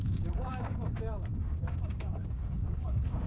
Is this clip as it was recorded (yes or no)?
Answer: no